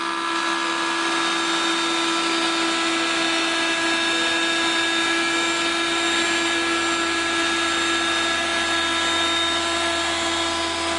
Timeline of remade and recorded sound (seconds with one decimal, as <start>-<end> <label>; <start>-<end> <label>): 0.0-11.0 recorded